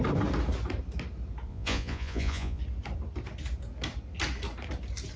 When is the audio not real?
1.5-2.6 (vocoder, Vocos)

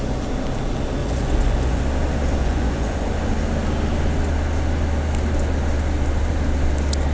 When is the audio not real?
1.0-1.8 (vocoder, Vocos); 2.4-3.1

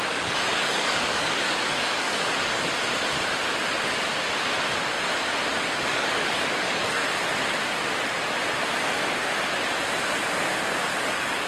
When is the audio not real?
0.0-2.7 (codec, DAC); 5.8-7.0; 11.0-11.5

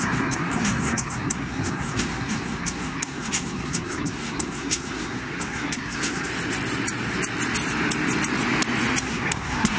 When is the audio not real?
0.0-6.3 (codec, SNAC); 9.0-9.8